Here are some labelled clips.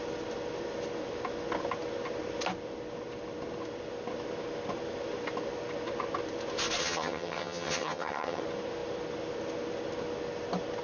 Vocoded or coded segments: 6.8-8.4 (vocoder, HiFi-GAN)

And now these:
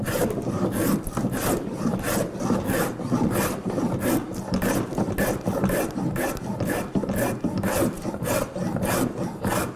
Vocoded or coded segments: none

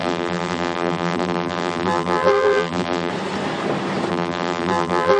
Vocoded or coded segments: 0.0-3.1 (vocoder, BigVGAN v2); 4.1-5.2

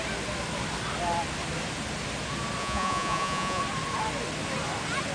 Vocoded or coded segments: 2.6-3.6 (vocoder, Vocos)

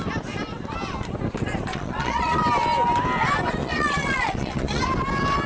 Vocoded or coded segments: 1.7-2.4 (vocoder, Vocos); 3.6-4.8

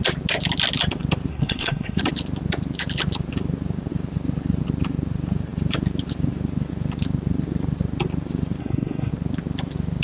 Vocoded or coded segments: 1.3-2.0 (codec, SNAC); 8.6-9.1